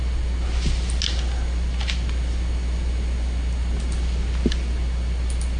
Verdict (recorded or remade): recorded